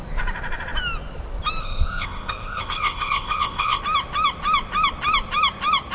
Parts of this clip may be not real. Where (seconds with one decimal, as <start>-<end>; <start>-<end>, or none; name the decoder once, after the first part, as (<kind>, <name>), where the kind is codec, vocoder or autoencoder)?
1.6-3.8 (codec, ZipCodec)